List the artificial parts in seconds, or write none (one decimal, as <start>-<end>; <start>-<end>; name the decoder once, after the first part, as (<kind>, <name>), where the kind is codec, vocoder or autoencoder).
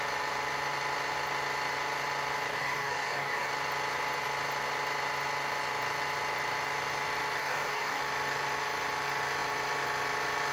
2.5-3.5 (codec, DAC); 7.4-8.0